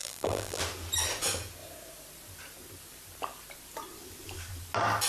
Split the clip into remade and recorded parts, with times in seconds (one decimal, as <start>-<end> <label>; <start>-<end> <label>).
0.0-0.6 remade; 0.6-5.1 recorded